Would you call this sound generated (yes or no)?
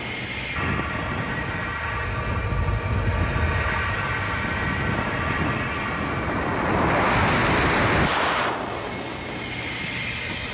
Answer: no